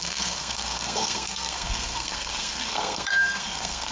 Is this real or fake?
fake